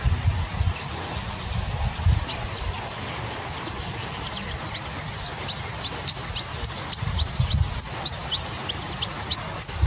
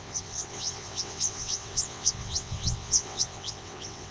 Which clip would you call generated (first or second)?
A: second